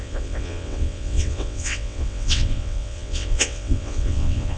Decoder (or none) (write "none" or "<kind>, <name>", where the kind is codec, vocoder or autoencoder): vocoder, WaveNeXt